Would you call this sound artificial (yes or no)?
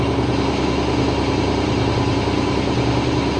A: no